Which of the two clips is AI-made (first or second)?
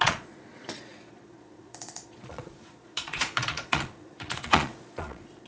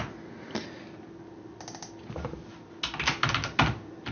first